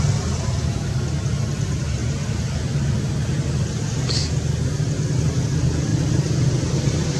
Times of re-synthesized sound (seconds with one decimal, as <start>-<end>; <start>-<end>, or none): none